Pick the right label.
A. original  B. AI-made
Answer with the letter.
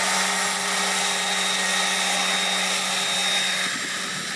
A